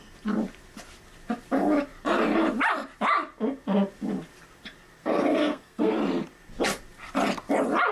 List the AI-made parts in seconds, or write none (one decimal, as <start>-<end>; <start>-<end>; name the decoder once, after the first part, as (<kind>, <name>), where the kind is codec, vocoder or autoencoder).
5.0-5.9 (codec, SNAC)